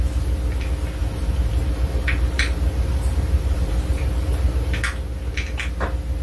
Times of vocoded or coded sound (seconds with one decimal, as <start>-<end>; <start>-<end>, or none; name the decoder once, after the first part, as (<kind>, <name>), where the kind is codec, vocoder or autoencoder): 1.0-4.7 (vocoder, BigVGAN v2)